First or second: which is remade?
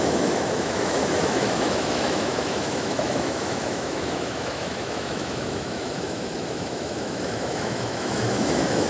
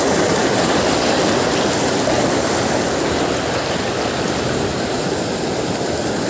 first